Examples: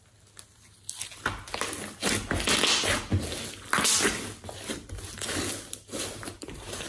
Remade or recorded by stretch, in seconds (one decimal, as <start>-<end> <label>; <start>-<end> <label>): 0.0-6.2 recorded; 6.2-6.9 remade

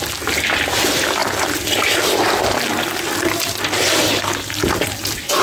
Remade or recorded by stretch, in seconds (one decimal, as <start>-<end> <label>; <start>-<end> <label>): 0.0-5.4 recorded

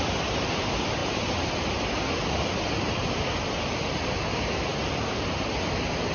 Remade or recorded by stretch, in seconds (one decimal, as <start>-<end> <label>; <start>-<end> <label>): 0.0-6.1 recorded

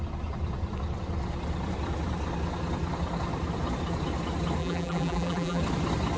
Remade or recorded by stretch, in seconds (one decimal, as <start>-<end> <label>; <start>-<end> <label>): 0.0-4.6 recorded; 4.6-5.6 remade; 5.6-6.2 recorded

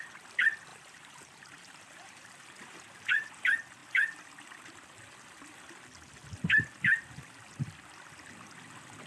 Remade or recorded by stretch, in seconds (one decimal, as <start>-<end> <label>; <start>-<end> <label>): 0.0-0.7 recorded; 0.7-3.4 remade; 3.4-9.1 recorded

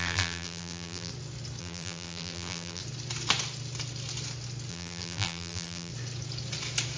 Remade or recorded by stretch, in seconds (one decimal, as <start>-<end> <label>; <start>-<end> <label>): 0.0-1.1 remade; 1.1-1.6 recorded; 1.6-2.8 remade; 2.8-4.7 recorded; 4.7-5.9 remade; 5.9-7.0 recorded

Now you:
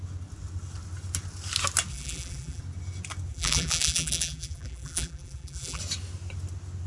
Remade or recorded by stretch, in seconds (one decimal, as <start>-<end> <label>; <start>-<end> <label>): 0.0-1.9 recorded; 1.9-2.6 remade; 2.6-3.3 recorded; 3.3-5.8 remade; 5.8-6.9 recorded

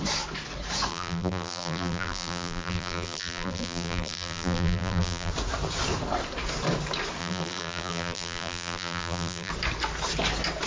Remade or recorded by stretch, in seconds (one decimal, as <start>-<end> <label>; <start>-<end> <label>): 0.0-0.9 recorded; 0.9-5.3 remade; 5.3-7.2 recorded; 7.2-9.5 remade; 9.5-10.7 recorded